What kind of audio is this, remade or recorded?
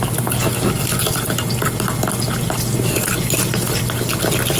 recorded